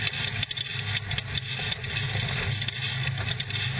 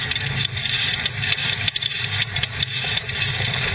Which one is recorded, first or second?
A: first